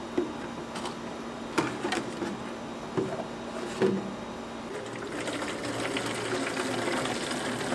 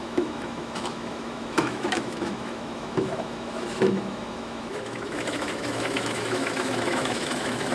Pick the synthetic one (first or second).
second